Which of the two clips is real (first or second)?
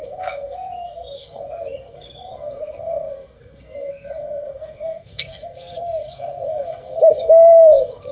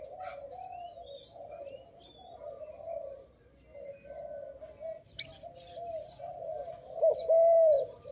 second